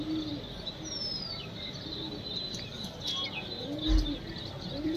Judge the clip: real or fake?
real